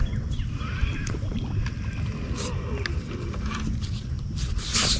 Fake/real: real